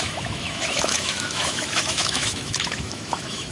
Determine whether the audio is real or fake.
fake